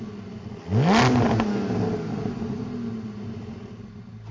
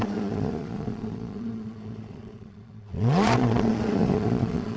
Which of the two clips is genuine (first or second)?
first